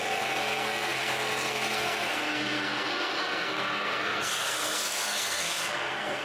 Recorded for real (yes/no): no